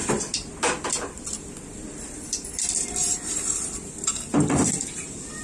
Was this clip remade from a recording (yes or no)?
yes